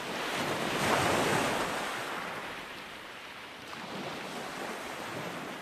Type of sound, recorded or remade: recorded